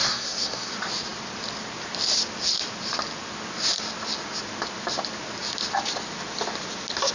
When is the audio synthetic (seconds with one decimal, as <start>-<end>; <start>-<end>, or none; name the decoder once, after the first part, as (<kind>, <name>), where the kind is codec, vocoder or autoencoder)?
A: 0.0-0.7 (codec, SNAC)